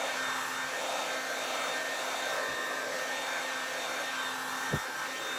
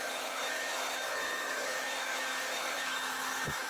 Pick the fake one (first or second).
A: second